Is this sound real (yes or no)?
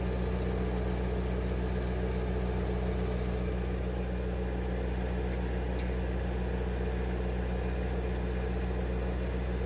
yes